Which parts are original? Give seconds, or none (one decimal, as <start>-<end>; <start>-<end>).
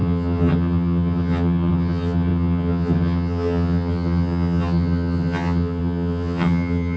none